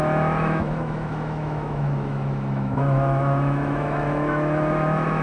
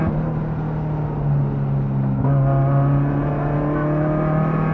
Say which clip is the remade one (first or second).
first